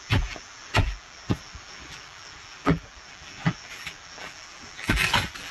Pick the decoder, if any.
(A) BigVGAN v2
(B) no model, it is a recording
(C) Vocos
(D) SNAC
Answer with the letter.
A